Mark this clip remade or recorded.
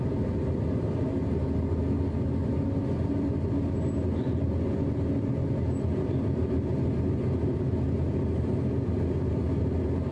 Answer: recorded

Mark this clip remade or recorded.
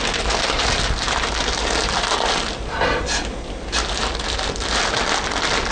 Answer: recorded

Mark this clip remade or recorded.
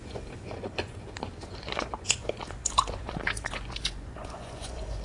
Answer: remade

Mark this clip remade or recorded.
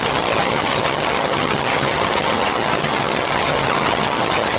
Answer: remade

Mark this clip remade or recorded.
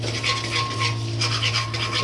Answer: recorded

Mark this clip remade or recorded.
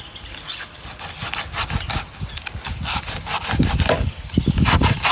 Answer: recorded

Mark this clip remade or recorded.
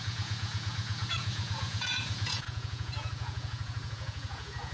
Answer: remade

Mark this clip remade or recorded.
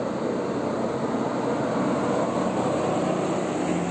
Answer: recorded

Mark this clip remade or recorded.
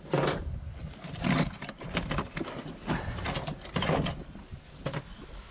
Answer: recorded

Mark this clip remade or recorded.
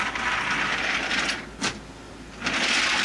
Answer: recorded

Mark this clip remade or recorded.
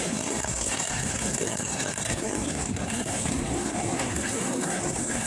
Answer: remade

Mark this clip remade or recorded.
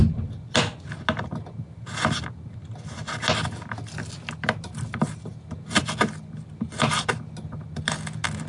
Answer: recorded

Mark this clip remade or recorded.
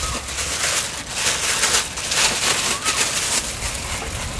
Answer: recorded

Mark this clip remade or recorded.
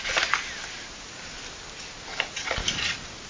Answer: recorded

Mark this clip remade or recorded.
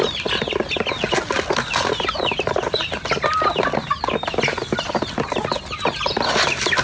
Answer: recorded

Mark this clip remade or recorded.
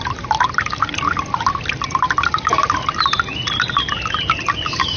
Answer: recorded